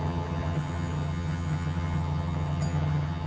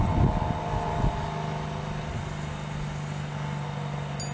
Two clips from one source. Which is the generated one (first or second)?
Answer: first